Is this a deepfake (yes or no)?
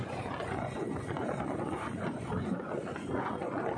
yes